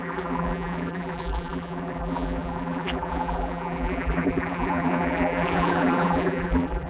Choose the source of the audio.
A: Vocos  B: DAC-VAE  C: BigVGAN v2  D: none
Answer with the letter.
C